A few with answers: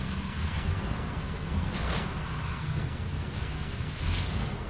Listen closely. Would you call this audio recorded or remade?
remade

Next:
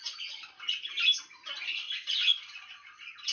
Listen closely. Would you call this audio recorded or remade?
recorded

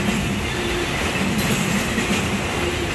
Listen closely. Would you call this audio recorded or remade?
recorded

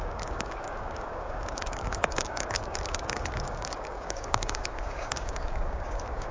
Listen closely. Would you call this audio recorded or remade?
remade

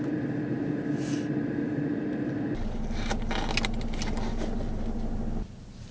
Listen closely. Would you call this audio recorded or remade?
recorded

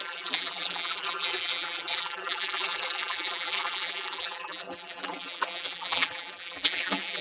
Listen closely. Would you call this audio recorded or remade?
remade